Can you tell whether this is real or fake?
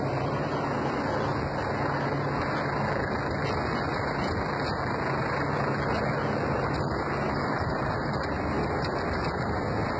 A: real